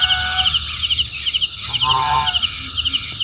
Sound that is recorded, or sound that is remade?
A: recorded